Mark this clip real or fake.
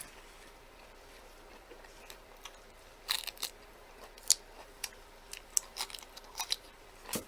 fake